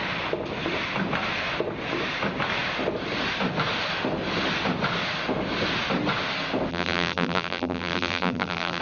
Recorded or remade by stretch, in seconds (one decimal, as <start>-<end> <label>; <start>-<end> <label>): 0.0-6.7 recorded; 6.7-8.8 remade